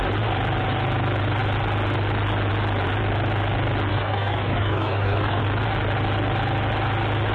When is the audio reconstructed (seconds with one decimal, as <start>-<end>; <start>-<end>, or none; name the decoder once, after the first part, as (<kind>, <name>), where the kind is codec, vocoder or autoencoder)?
3.9-5.4 (codec, DAC)